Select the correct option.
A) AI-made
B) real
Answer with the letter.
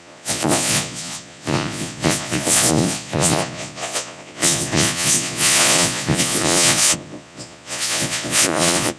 A